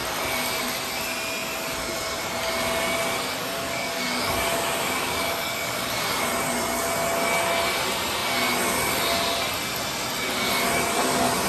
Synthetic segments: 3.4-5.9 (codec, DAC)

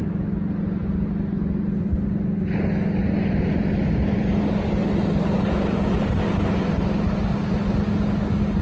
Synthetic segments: none

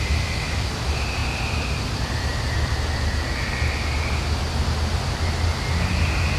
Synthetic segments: none

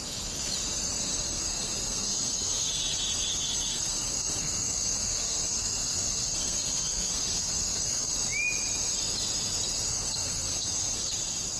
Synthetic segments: 1.1-2.8 (codec, SNAC); 3.3-8.1; 9.9-11.1

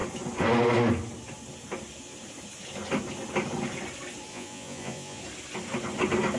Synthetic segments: 4.3-5.2 (vocoder, Vocos)